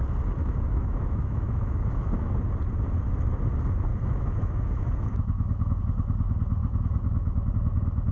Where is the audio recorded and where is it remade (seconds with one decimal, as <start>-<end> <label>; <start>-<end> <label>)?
0.0-0.4 recorded; 0.4-2.3 remade; 2.3-3.9 recorded; 3.9-5.8 remade; 5.8-6.6 recorded; 6.6-7.5 remade; 7.5-8.1 recorded